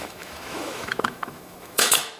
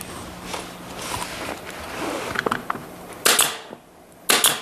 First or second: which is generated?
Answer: first